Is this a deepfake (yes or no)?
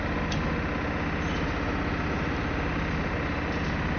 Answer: no